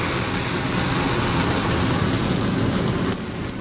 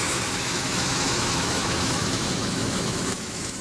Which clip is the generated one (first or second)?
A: second